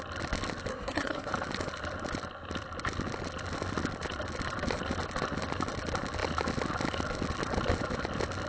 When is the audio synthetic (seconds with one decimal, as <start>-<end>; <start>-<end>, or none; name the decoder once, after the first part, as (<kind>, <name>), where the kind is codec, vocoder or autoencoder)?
0.7-1.3 (codec, SNAC)